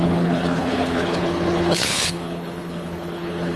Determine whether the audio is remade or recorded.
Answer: remade